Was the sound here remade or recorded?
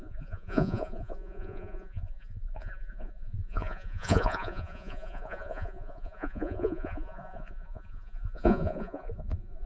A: remade